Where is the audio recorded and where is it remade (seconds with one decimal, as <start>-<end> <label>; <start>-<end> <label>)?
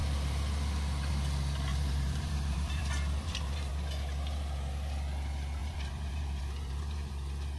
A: 0.0-1.7 recorded; 1.7-3.7 remade; 3.7-5.6 recorded; 5.6-7.1 remade; 7.1-7.6 recorded